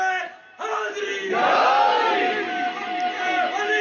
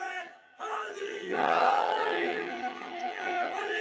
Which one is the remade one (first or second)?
second